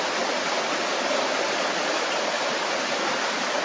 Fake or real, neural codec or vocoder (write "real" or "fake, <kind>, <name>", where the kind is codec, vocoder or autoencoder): real